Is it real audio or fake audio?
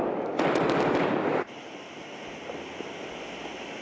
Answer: real